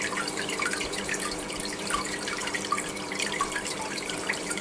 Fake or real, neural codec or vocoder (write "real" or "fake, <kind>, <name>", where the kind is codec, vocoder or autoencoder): fake, vocoder, BigVGAN v2